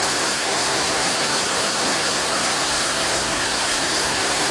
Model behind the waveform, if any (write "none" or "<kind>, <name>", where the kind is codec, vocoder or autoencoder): codec, SNAC